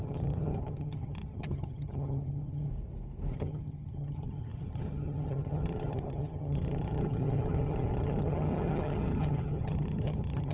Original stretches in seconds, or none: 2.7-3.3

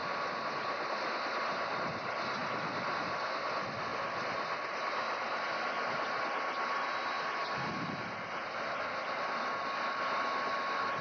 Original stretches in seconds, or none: 0.0-11.0